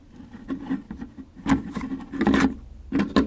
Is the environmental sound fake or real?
real